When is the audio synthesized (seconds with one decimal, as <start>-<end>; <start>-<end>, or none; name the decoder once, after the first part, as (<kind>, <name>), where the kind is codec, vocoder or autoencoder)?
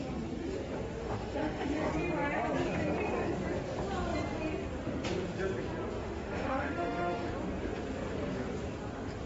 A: 1.0-1.9 (autoencoder, DAC-VAE); 6.0-7.3